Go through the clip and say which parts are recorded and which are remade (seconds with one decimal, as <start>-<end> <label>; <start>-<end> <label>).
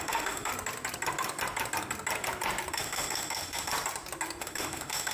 0.0-0.5 remade; 0.5-2.7 recorded; 2.7-3.7 remade; 3.7-4.4 recorded; 4.4-5.1 remade